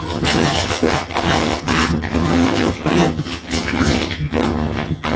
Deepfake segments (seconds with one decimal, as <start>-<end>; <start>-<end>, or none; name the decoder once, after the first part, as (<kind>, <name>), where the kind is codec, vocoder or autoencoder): 0.0-5.2 (vocoder, HiFi-GAN)